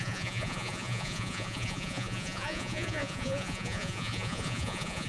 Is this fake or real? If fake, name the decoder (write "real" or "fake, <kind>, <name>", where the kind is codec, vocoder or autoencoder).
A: fake, vocoder, Vocos